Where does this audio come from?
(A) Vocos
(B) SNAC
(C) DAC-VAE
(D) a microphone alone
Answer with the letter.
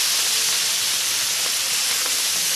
D